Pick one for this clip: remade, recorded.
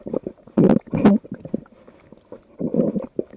recorded